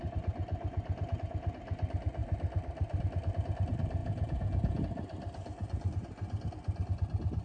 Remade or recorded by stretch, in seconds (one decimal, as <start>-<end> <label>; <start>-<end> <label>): 0.0-4.0 recorded; 4.0-4.8 remade; 4.8-7.4 recorded